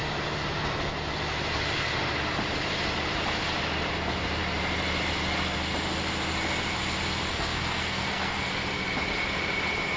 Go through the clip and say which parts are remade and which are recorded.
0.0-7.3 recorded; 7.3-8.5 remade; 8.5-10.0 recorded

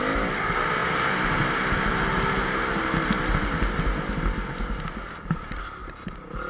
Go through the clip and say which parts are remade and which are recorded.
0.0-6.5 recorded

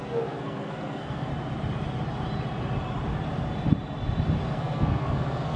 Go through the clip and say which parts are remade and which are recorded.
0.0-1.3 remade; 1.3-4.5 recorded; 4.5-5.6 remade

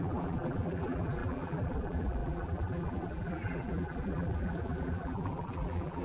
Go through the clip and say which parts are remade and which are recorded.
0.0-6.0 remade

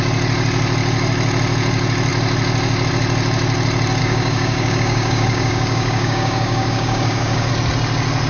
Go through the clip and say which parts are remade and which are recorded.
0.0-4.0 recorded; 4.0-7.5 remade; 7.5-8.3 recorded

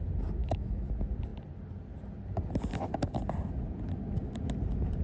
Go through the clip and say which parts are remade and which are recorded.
0.0-0.4 recorded; 0.4-0.9 remade; 0.9-5.0 recorded